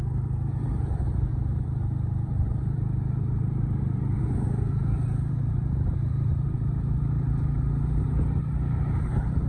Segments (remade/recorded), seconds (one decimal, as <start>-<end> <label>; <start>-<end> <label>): 0.0-9.5 remade